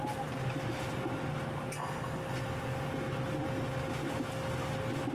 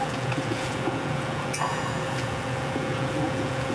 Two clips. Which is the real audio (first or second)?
first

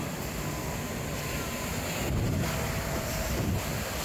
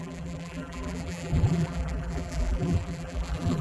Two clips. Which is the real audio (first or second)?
first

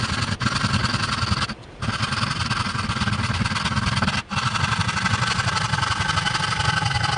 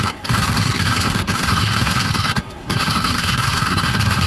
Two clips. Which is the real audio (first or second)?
first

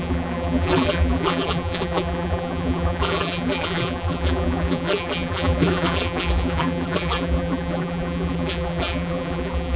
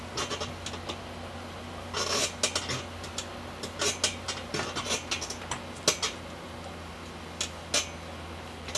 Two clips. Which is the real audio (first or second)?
second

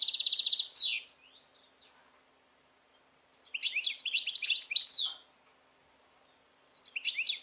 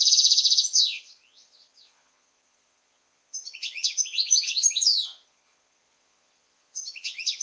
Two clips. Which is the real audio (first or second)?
first